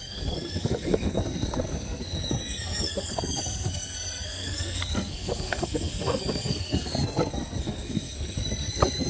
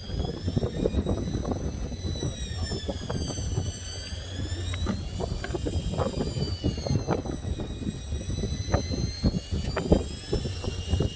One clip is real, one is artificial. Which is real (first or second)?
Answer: second